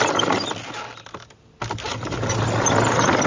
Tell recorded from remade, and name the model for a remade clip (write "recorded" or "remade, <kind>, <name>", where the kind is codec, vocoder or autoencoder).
recorded